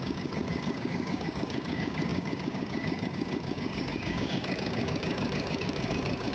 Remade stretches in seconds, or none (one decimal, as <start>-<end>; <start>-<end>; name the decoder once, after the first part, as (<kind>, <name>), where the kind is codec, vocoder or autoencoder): 0.0-6.3 (codec, DAC)